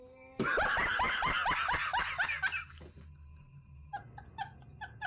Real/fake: fake